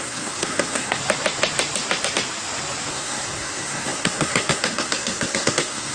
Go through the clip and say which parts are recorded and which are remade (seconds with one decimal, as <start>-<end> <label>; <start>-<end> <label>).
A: 0.0-1.0 remade; 1.0-2.9 recorded; 2.9-5.9 remade